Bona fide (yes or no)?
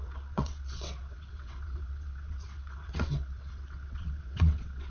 no